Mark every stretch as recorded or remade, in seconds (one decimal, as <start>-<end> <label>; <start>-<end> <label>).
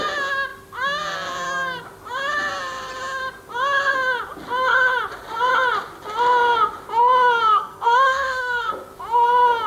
0.0-7.5 recorded; 7.5-8.7 remade; 8.7-9.7 recorded